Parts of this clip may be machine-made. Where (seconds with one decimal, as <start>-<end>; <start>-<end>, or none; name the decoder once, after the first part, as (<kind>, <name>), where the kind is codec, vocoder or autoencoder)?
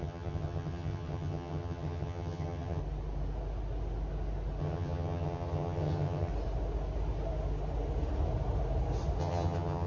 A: 0.0-2.8 (vocoder, HiFi-GAN); 4.6-6.3; 9.2-9.9